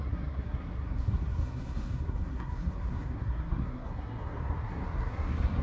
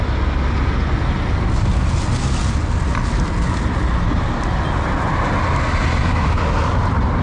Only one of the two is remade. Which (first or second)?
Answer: first